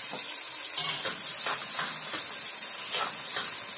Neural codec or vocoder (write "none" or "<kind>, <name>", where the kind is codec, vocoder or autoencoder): none